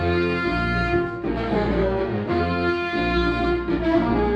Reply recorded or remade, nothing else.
remade